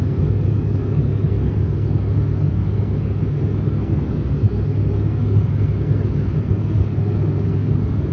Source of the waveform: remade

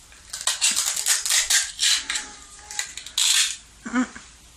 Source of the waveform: recorded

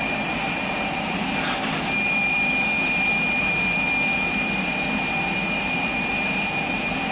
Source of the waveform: remade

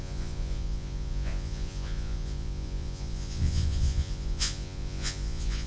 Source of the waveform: remade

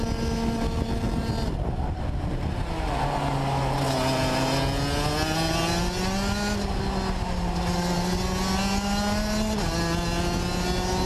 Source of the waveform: recorded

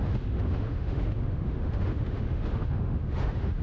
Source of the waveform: remade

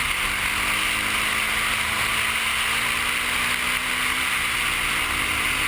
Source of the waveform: recorded